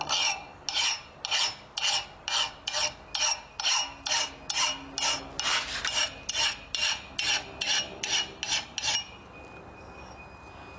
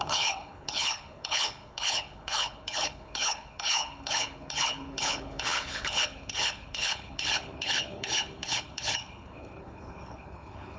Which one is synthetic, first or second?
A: second